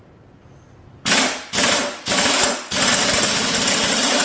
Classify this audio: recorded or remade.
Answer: recorded